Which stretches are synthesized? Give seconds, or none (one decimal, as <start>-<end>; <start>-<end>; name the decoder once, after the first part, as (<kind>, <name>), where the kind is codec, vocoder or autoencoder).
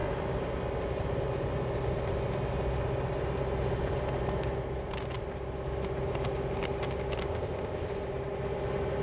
7.3-7.9 (codec, ZipCodec)